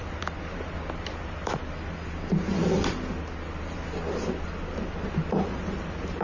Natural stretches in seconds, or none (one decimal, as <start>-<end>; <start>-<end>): 1.6-5.3

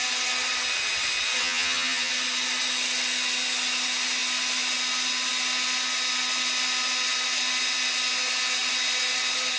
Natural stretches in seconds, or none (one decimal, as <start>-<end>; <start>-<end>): 0.0-1.4; 2.1-9.6

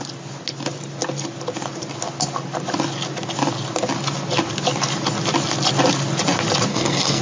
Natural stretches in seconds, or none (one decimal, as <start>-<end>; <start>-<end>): 0.0-6.7

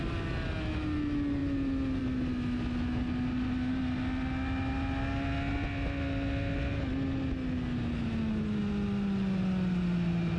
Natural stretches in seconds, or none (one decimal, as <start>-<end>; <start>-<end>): 0.0-10.4

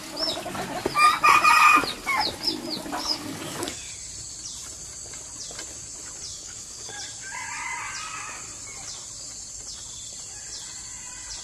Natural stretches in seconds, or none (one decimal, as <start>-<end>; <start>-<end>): 0.0-3.0; 3.9-6.3; 6.9-11.4

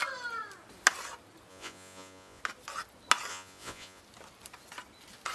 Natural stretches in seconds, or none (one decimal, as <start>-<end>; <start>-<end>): 0.0-1.5; 2.4-3.3; 4.0-5.3